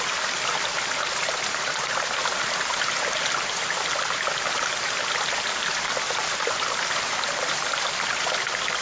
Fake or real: real